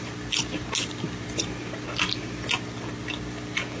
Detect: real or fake real